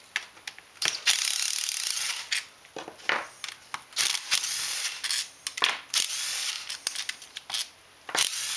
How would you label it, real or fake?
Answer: real